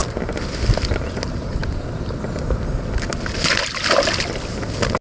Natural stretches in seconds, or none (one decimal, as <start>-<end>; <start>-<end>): 0.0-5.0